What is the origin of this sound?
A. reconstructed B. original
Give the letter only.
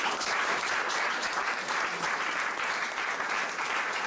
A